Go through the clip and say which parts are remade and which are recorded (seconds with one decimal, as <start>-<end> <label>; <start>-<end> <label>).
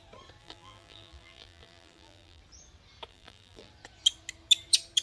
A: 0.0-0.4 recorded; 0.4-2.4 remade; 2.4-3.1 recorded; 3.1-3.7 remade; 3.7-5.0 recorded